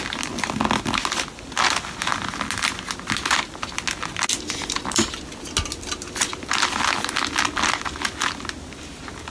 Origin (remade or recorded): recorded